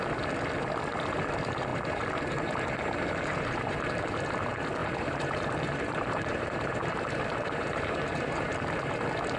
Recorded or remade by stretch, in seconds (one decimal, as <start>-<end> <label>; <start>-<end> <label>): 0.0-1.7 recorded; 1.7-4.3 remade; 4.3-4.8 recorded; 4.8-8.8 remade; 8.8-9.4 recorded